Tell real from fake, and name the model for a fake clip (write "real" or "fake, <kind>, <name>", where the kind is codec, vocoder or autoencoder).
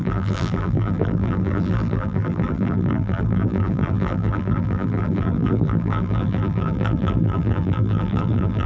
fake, vocoder, BigVGAN v2